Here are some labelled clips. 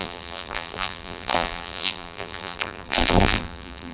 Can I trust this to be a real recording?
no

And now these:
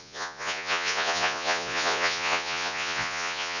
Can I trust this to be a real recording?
no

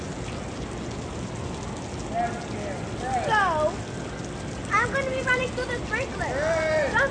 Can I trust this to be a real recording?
yes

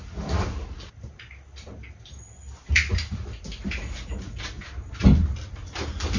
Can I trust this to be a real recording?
yes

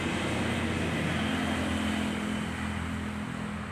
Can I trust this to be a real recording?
yes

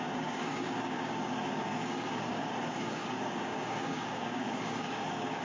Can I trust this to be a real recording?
no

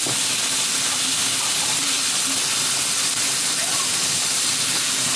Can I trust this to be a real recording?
yes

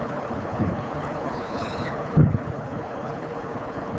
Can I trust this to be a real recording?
no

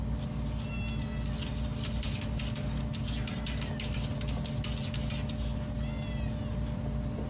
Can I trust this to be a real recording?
yes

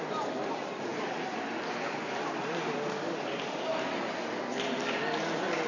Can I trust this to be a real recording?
yes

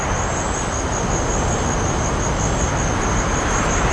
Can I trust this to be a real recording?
yes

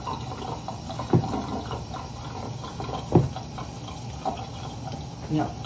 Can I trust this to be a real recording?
yes